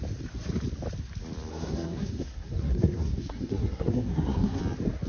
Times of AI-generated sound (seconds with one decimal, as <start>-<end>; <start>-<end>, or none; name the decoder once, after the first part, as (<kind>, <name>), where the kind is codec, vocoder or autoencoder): 1.5-4.6 (codec, SNAC)